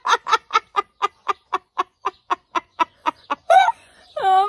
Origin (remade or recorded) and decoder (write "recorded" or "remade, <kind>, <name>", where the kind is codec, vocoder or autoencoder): remade, vocoder, Vocos